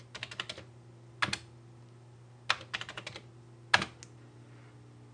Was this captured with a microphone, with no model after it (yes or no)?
yes